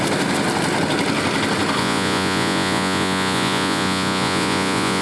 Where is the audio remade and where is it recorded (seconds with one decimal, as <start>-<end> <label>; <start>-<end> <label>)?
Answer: 0.0-1.8 recorded; 1.8-5.0 remade